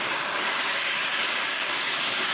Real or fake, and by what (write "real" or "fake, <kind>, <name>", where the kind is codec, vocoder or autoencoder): fake, codec, DAC